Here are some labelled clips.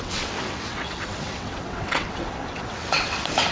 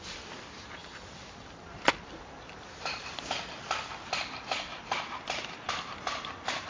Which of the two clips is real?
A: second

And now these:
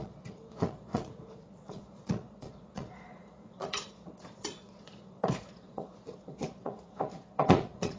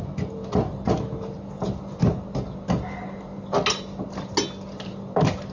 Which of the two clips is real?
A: second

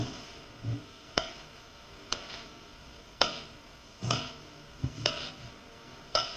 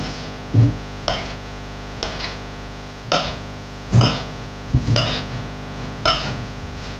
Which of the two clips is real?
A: second